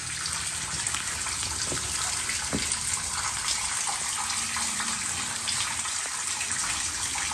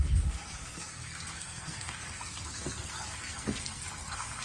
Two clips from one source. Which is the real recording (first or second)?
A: first